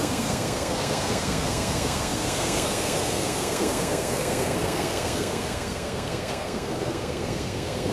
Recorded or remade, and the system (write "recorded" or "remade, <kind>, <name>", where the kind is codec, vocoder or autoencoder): remade, codec, SNAC